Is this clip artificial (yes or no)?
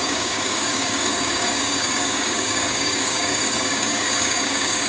yes